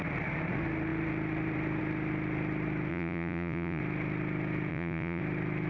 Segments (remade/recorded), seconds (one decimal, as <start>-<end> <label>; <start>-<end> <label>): 0.0-2.9 recorded; 2.9-3.8 remade; 3.8-4.7 recorded; 4.7-5.2 remade; 5.2-5.7 recorded